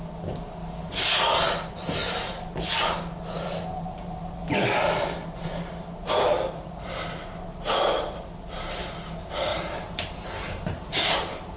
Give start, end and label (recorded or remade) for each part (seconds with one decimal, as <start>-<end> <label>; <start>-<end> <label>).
0.0-2.0 recorded; 2.0-2.5 remade; 2.5-9.5 recorded; 9.5-11.6 remade